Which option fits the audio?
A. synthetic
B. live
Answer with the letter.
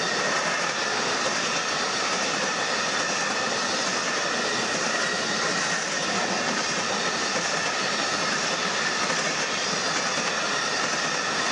B